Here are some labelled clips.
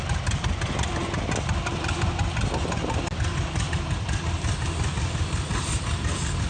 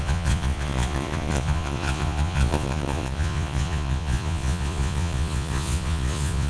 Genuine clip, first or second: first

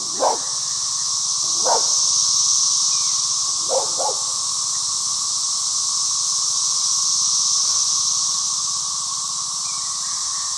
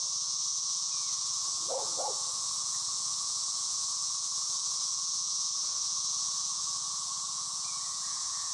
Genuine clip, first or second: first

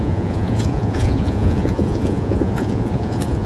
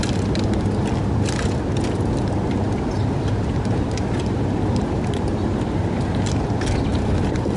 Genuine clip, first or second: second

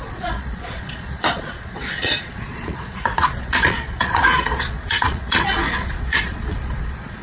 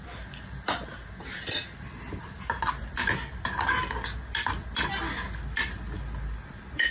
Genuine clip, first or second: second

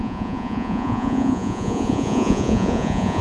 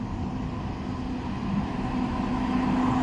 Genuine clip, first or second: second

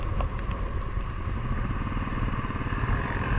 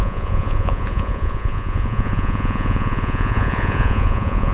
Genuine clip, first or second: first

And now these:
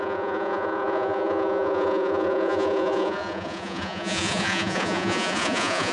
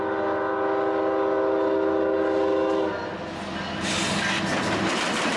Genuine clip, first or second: second